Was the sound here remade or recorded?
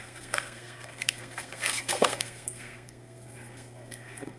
remade